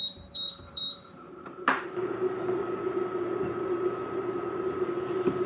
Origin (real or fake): fake